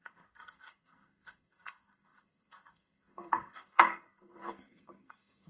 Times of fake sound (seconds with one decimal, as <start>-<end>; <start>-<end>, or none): 0.0-5.5